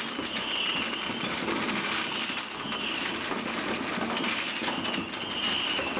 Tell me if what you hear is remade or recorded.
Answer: recorded